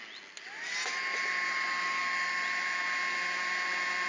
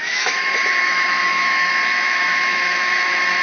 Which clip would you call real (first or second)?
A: first